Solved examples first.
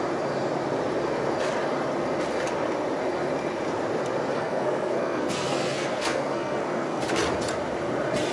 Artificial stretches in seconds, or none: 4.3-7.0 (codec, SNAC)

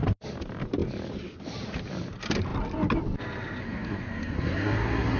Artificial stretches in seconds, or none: 3.6-5.2 (codec, SNAC)

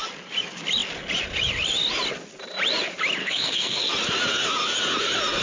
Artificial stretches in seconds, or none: 3.2-3.9 (codec, SNAC)

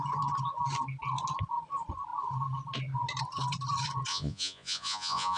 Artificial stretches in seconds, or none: 4.1-5.4 (vocoder, Vocos)